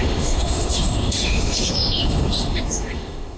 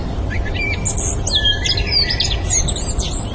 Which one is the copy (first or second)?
first